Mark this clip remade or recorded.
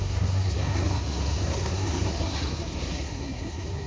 remade